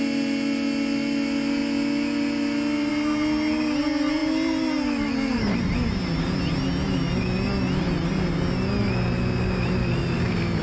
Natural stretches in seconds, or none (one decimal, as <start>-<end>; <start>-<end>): 0.0-10.6